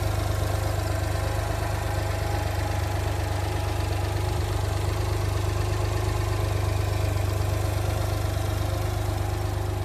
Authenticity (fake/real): real